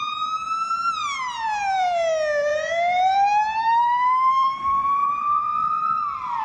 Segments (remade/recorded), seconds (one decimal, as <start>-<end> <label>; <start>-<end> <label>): 0.0-1.0 recorded; 1.0-2.1 remade; 2.1-2.5 recorded; 2.5-6.4 remade